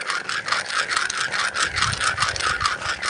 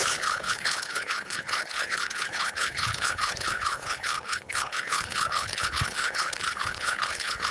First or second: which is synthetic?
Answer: second